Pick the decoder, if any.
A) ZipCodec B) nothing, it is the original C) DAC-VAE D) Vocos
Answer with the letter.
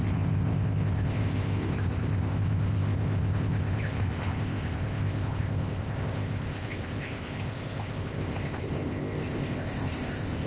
A